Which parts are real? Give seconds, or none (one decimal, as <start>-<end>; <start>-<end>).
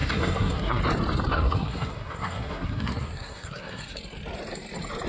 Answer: 0.8-1.3; 4.0-5.1